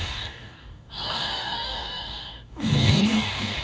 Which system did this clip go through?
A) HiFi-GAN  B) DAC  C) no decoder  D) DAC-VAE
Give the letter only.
B